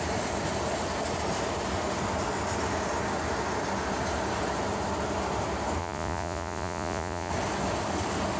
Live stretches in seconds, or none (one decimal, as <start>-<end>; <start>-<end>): 0.0-5.8; 7.3-8.4